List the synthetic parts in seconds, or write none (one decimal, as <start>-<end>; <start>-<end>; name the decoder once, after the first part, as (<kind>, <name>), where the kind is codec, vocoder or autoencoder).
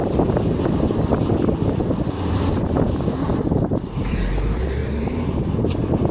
0.0-1.0 (vocoder, BigVGAN v2); 4.8-5.3